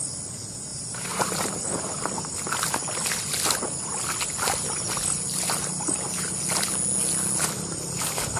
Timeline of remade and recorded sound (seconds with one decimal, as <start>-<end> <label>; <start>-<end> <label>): 0.0-0.7 recorded; 0.7-1.6 remade; 1.6-8.4 recorded